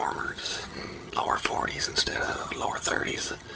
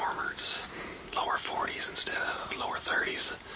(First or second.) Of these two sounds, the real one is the second